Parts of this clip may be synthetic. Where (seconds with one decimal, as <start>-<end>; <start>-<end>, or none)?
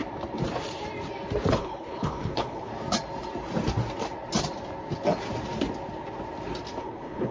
1.5-2.7; 6.8-7.3